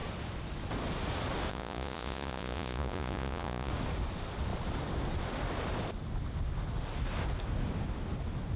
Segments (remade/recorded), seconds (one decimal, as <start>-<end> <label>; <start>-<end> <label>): 0.0-1.5 recorded; 1.5-3.7 remade; 3.7-8.6 recorded